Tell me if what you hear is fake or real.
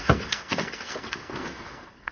fake